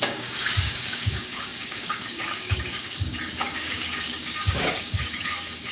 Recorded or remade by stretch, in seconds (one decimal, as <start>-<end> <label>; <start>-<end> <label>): 0.0-5.7 remade